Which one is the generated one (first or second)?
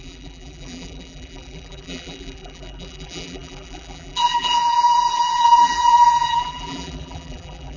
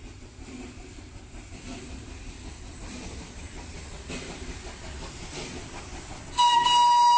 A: first